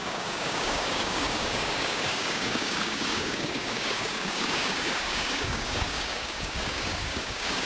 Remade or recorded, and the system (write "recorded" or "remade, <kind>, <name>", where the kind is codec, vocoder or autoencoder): remade, codec, DAC